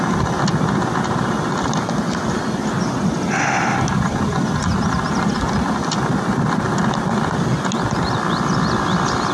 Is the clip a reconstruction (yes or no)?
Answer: no